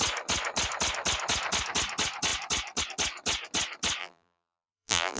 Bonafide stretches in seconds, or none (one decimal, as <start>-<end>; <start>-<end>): 0.0-4.0